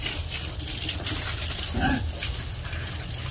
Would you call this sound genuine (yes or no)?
yes